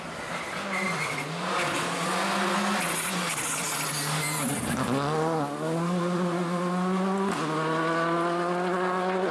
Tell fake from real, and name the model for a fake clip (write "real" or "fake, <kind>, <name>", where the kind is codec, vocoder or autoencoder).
real